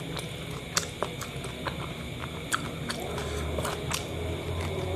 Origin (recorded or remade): recorded